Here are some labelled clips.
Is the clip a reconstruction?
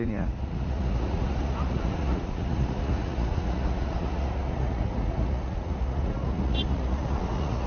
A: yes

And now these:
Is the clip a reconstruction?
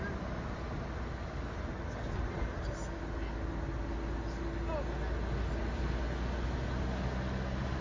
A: no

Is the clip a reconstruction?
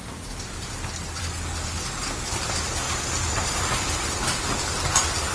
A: yes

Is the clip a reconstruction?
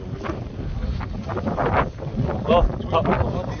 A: no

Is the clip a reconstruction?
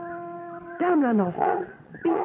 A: yes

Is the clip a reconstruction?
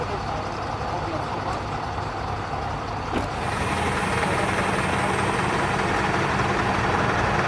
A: no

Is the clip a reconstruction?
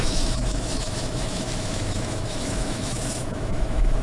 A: yes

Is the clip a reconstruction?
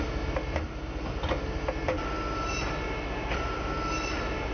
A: no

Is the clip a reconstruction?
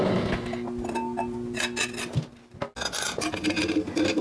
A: no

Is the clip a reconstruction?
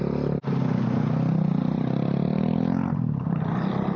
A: no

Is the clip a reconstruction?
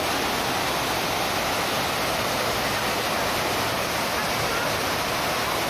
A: no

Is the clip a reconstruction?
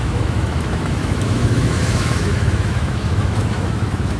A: yes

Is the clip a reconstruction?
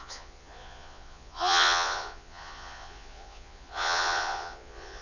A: yes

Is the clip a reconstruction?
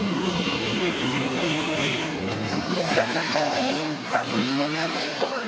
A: yes